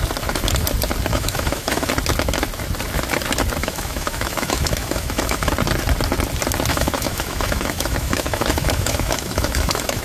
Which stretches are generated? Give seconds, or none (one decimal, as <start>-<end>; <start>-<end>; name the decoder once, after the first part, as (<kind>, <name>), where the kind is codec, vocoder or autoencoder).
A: 1.1-1.9 (autoencoder, DAC-VAE); 3.6-5.5; 6.7-10.0